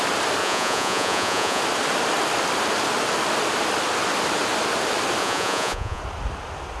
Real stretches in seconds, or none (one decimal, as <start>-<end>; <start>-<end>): 0.0-0.4; 1.6-5.2; 6.0-6.8